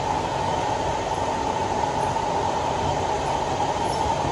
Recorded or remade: recorded